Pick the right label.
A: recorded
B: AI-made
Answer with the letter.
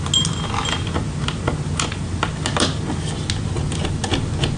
A